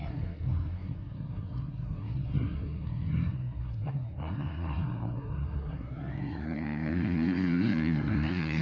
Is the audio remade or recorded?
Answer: remade